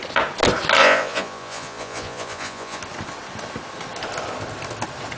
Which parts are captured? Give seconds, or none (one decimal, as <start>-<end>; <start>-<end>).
0.0-0.8; 2.8-5.2